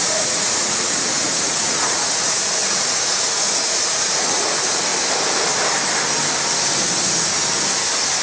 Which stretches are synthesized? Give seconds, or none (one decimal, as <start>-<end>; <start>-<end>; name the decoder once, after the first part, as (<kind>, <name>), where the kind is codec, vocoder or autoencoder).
0.0-4.9 (vocoder, Vocos)